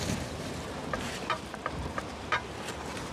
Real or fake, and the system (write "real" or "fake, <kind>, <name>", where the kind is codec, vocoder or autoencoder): fake, vocoder, BigVGAN v2